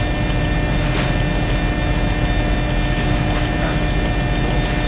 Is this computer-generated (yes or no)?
no